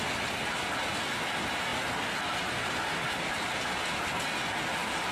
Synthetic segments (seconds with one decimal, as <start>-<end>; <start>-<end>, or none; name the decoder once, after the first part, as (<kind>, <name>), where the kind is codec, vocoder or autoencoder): none